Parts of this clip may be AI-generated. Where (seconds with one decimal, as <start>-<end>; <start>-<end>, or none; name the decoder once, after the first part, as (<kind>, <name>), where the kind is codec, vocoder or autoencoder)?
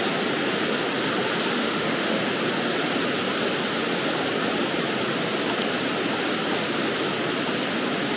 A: 1.6-2.2 (autoencoder, DAC-VAE)